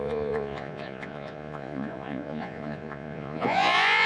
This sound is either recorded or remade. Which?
remade